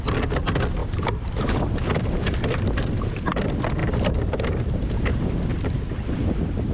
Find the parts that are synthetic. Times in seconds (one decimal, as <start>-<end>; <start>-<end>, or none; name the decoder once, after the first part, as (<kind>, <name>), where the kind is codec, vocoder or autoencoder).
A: 0.8-3.4 (vocoder, BigVGAN v2); 3.8-5.1; 5.5-6.2